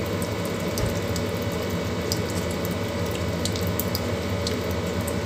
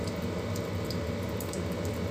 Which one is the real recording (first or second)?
first